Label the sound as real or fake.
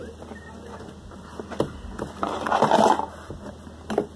real